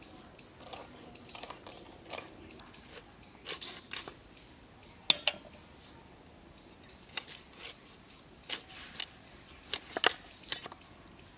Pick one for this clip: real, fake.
real